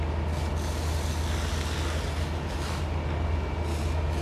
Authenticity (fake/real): real